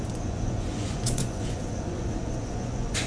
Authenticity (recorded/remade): remade